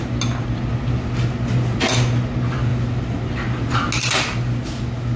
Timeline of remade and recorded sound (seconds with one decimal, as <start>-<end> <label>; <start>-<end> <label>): 0.0-5.2 recorded